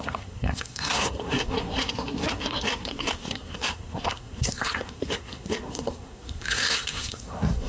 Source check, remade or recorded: remade